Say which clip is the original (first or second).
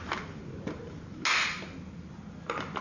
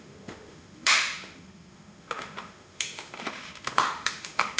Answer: first